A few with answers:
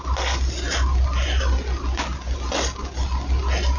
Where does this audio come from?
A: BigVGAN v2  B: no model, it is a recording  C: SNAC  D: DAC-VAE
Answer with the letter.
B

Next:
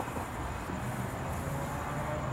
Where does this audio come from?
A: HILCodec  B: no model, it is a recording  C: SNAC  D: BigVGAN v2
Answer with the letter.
B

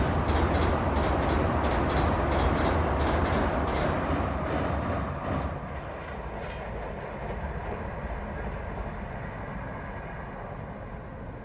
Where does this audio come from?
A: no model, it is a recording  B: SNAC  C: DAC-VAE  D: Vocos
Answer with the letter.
A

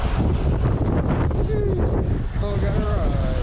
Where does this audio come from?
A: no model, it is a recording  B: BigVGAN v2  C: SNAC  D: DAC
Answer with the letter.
A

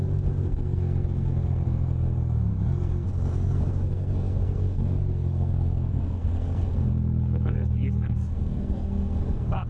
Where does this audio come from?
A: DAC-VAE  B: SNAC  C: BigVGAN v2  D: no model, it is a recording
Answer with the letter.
B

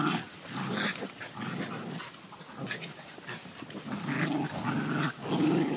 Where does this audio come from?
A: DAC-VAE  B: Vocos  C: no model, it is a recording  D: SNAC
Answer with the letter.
C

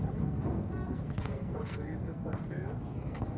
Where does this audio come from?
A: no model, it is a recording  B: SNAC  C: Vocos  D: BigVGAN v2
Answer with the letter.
B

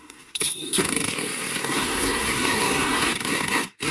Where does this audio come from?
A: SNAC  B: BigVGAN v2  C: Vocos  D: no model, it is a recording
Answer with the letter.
A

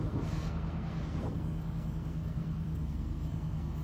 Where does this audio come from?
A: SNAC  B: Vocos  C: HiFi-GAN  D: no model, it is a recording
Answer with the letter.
A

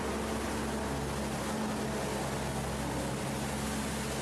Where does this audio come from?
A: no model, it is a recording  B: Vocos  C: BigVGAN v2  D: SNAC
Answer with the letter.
A